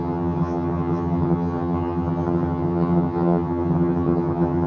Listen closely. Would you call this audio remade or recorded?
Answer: remade